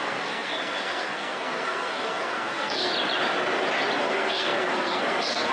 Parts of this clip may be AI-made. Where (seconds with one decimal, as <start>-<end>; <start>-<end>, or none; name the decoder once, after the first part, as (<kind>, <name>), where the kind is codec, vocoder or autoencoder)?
0.0-2.9 (codec, SNAC); 4.0-5.5